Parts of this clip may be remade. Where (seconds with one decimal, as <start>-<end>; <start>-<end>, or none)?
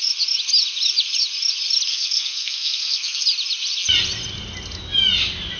1.9-3.2